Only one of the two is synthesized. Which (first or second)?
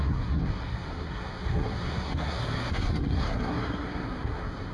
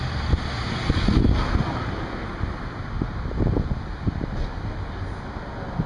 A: first